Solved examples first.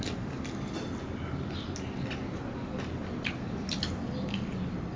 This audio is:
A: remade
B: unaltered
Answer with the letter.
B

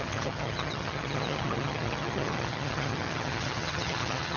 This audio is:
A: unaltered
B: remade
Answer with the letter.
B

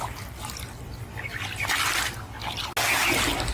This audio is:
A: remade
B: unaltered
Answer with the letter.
B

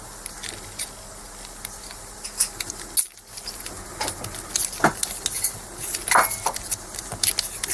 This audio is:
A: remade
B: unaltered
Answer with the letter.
B